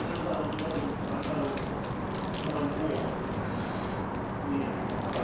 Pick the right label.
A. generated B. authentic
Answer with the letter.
B